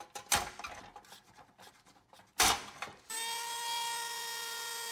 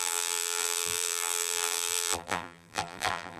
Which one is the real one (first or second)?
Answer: first